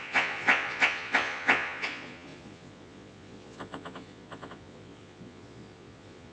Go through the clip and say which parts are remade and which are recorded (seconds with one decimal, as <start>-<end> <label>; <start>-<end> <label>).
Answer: 0.0-6.3 remade